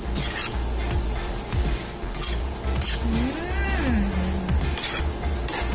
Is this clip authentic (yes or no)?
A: yes